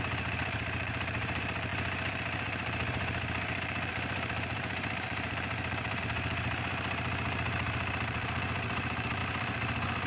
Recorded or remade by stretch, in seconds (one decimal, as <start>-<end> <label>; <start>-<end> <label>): 0.0-9.2 remade; 9.2-10.1 recorded